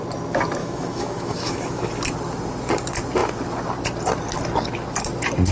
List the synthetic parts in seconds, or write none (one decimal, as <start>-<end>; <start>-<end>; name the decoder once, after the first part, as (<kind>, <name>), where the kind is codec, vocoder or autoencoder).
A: 0.6-1.9 (autoencoder, DAC-VAE)